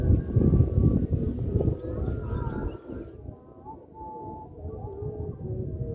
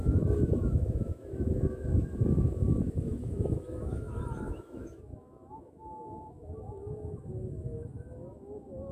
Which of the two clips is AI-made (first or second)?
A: second